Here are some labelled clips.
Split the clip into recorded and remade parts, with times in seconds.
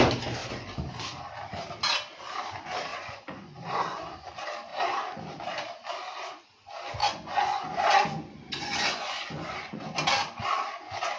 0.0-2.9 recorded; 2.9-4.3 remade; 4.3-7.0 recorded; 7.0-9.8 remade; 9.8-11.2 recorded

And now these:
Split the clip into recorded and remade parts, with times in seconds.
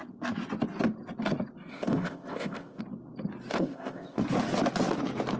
0.0-1.7 recorded; 1.7-2.8 remade; 2.8-3.5 recorded; 3.5-4.2 remade; 4.2-5.4 recorded